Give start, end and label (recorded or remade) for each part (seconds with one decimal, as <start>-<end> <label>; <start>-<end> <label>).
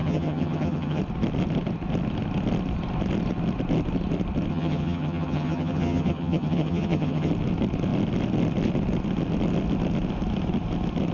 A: 0.0-1.0 remade; 1.0-4.5 recorded; 4.5-7.3 remade; 7.3-11.1 recorded